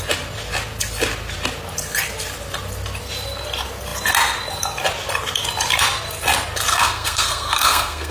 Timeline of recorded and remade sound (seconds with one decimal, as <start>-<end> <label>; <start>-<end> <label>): 0.0-6.7 recorded; 6.7-8.1 remade